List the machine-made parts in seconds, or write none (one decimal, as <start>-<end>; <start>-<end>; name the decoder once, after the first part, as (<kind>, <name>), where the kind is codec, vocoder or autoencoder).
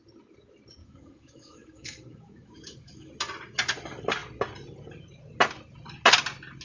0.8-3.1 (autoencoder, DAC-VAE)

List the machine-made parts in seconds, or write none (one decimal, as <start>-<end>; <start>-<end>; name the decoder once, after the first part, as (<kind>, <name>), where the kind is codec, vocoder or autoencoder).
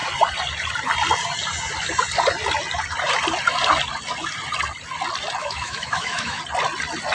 5.4-6.4 (autoencoder, DAC-VAE)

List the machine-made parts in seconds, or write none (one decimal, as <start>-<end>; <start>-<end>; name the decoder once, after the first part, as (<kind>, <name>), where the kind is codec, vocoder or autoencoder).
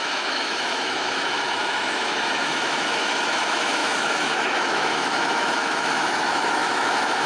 0.0-7.3 (autoencoder, DAC-VAE)